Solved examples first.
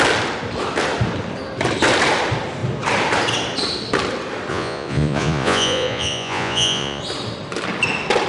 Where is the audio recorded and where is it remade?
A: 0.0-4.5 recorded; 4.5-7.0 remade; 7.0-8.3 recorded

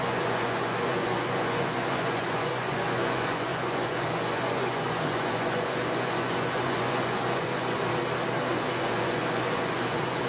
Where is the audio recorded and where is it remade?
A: 0.0-7.9 remade; 7.9-8.5 recorded; 8.5-10.3 remade

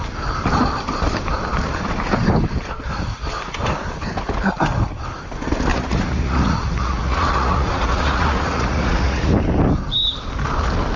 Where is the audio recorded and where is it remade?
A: 0.0-5.7 recorded; 5.7-9.3 remade; 9.3-11.0 recorded

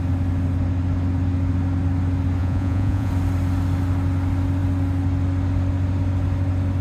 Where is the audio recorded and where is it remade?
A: 0.0-2.4 recorded; 2.4-3.1 remade; 3.1-6.8 recorded

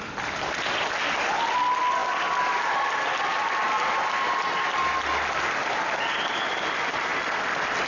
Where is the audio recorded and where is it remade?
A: 0.0-7.9 recorded

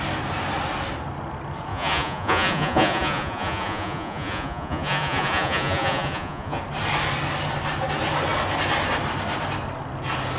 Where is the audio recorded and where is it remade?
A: 0.0-1.7 recorded; 1.7-6.6 remade; 6.6-10.4 recorded

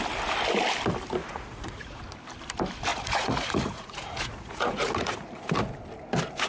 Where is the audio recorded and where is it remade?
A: 0.0-1.2 recorded; 1.2-2.0 remade; 2.0-2.9 recorded; 2.9-5.1 remade; 5.1-6.5 recorded